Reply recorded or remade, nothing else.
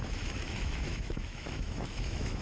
remade